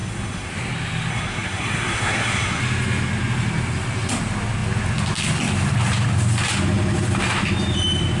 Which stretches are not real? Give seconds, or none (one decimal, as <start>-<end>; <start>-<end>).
0.0-0.5; 1.1-2.6